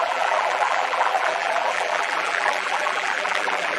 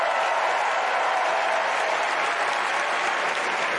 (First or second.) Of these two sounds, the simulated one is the first